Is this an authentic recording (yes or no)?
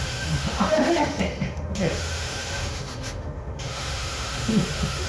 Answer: no